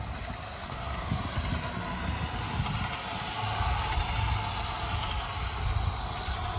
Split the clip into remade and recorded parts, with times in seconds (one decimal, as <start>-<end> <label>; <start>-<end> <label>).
0.0-0.6 recorded; 0.6-1.2 remade; 1.2-6.6 recorded